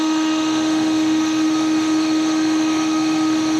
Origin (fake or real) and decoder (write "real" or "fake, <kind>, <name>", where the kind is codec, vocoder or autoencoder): fake, autoencoder, DAC-VAE